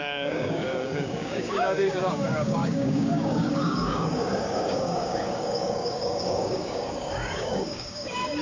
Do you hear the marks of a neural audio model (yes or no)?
yes